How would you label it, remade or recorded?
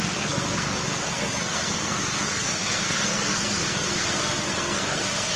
remade